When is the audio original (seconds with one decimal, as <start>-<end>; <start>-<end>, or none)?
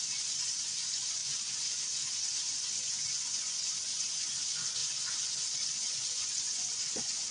none